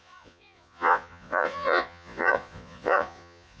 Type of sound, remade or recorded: remade